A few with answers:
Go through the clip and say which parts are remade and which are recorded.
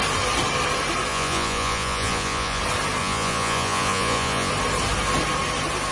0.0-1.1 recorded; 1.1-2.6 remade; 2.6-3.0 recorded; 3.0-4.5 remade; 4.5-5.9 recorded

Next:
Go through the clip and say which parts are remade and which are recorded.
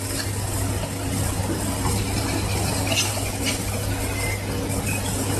0.0-5.4 recorded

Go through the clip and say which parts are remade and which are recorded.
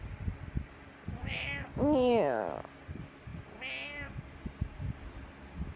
0.0-1.2 recorded; 1.2-2.8 remade; 2.8-5.8 recorded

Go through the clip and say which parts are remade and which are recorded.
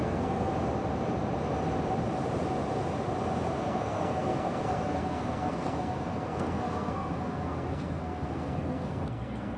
0.0-0.5 remade; 0.5-3.6 recorded; 3.6-9.6 remade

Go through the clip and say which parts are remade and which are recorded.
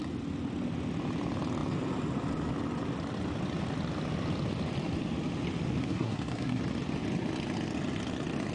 0.0-5.8 recorded; 5.8-6.6 remade; 6.6-8.5 recorded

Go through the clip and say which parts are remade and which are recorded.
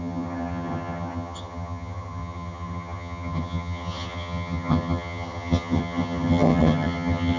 0.0-7.4 remade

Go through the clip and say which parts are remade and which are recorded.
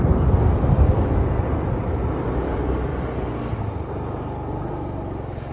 0.0-5.5 recorded